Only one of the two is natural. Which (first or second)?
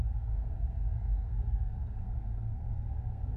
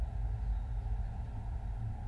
second